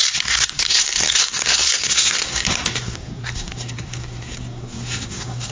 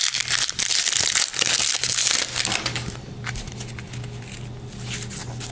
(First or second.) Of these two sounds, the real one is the second